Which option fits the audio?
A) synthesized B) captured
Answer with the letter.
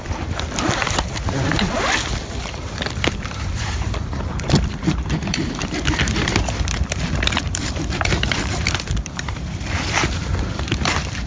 A